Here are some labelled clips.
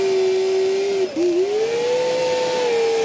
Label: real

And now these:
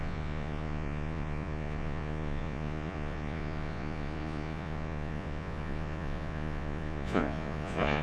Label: fake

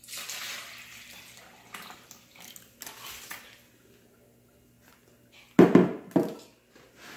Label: real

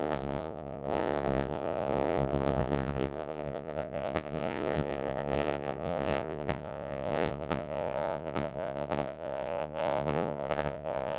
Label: fake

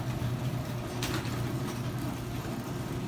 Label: real